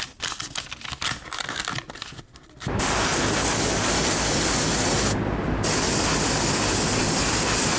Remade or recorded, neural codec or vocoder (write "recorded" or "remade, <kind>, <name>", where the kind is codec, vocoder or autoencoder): recorded